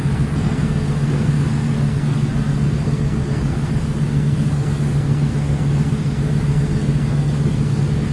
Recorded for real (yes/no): no